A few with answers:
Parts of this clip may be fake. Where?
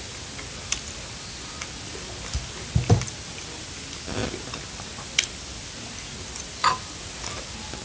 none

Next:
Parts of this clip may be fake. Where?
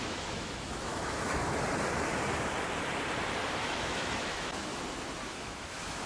0.0-1.4 (autoencoder, DAC-VAE); 3.7-4.7; 5.3-6.1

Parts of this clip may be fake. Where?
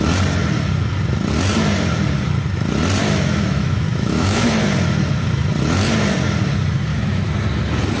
3.0-4.5 (autoencoder, DAC-VAE); 6.9-7.4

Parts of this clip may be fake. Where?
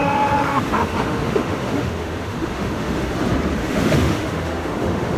0.0-3.1 (autoencoder, DAC-VAE); 3.6-5.2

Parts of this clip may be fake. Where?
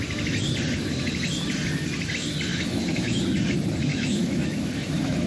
2.5-3.2 (autoencoder, DAC-VAE); 3.9-5.3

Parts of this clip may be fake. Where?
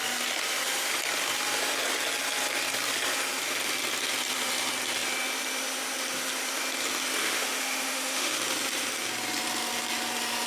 7.2-8.4 (autoencoder, DAC-VAE)